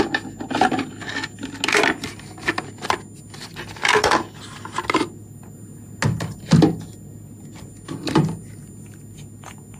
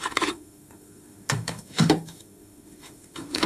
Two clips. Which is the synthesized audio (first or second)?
second